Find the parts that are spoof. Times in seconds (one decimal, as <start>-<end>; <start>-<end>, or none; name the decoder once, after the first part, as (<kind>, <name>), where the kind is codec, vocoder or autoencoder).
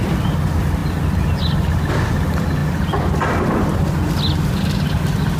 none